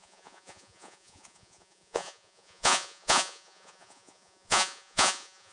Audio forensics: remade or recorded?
remade